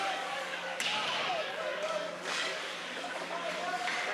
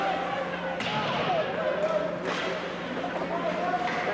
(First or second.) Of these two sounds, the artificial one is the first